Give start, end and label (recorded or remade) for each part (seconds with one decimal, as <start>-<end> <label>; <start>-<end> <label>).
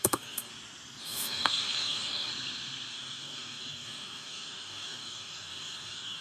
0.0-0.5 remade; 0.5-1.0 recorded; 1.0-2.3 remade; 2.3-2.9 recorded; 2.9-6.2 remade